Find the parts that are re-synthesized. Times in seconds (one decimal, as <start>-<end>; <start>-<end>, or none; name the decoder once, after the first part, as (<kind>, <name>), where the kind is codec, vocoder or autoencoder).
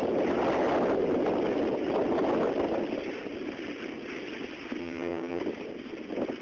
4.8-5.4 (vocoder, HiFi-GAN)